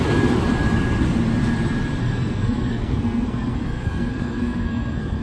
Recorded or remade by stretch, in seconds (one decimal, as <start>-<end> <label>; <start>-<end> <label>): 0.0-2.0 recorded; 2.0-5.2 remade